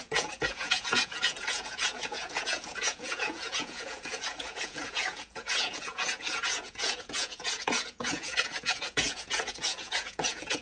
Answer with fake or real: fake